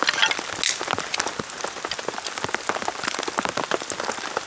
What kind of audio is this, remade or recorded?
recorded